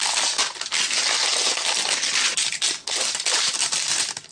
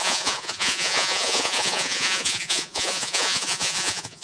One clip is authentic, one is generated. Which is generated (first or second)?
second